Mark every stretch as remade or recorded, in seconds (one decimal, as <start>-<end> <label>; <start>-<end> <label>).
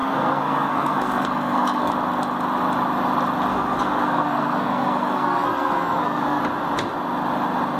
0.0-1.9 remade; 1.9-3.5 recorded; 3.5-6.4 remade; 6.4-7.8 recorded